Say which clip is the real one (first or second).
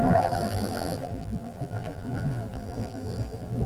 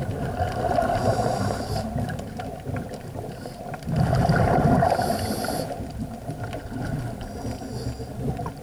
second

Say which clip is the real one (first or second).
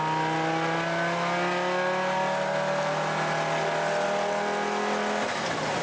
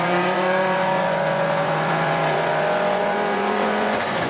first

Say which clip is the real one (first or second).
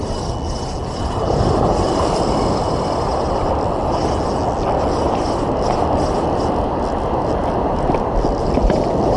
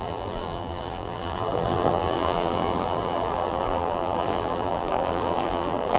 first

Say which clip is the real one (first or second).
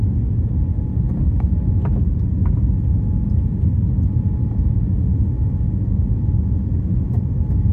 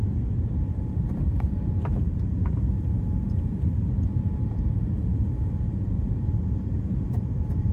first